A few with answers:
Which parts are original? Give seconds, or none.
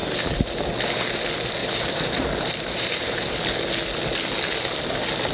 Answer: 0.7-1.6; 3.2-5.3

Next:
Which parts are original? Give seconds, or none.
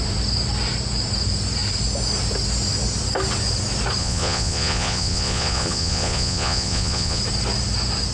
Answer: 0.0-4.0; 7.2-8.1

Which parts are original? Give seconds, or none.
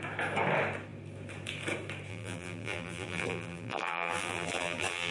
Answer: 0.0-2.1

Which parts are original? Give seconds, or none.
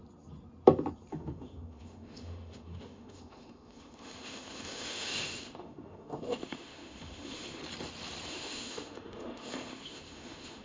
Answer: 0.0-1.1; 7.6-8.3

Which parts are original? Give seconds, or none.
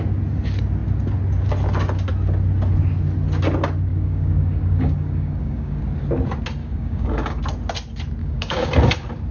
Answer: 0.0-3.9; 5.8-6.6; 7.4-8.2; 8.7-9.3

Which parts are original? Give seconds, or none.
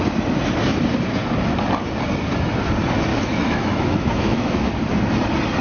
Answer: 0.0-3.1; 4.7-5.6